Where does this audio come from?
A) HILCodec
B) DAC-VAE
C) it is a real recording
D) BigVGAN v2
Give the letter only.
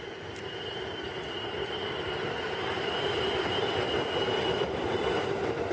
D